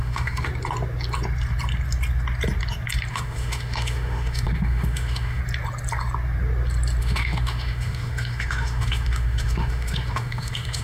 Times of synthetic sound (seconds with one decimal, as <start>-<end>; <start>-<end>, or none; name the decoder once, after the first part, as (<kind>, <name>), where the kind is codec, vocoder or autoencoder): 0.0-0.5 (autoencoder, DAC-VAE); 3.1-5.4; 7.0-10.8